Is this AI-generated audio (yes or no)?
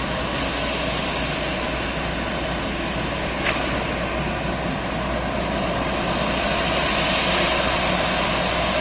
no